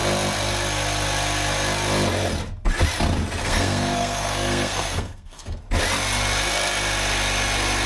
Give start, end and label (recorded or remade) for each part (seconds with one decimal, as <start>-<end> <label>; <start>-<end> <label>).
0.0-3.4 recorded; 3.4-5.6 remade; 5.6-7.9 recorded